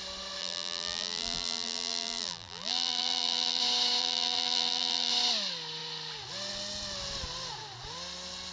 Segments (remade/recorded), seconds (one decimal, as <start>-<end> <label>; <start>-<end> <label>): 0.0-0.4 recorded; 0.4-3.6 remade; 3.6-4.0 recorded; 4.0-5.1 remade; 5.1-8.5 recorded